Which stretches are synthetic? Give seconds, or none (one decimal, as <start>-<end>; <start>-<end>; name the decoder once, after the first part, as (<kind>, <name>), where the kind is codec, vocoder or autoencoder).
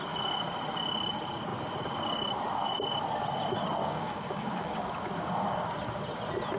3.8-5.7 (codec, DAC)